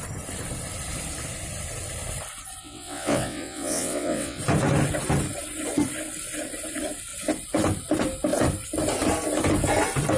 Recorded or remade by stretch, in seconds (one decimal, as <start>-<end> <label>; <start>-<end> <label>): 0.0-2.6 recorded; 2.6-4.4 remade; 4.4-10.2 recorded